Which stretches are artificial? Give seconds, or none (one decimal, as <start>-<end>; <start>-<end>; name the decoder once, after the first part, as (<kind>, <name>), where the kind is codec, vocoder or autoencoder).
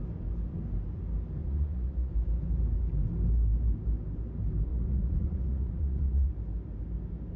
1.4-2.1 (vocoder, Vocos); 4.7-6.3